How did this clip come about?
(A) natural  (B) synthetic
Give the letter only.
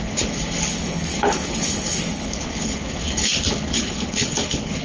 B